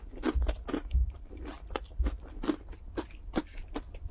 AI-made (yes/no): no